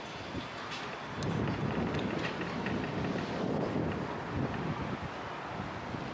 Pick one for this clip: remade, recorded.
recorded